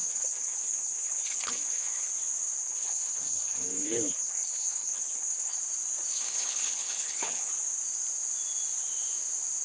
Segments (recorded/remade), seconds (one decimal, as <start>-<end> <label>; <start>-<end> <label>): 0.0-2.1 remade; 2.1-2.6 recorded; 2.6-5.6 remade; 5.6-6.1 recorded; 6.1-7.5 remade; 7.5-9.6 recorded